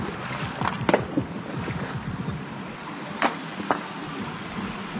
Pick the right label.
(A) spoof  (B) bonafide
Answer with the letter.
B